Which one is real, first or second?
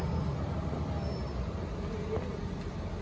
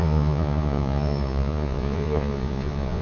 first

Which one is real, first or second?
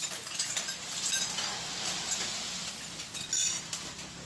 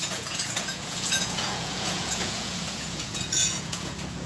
first